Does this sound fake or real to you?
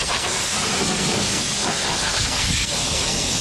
fake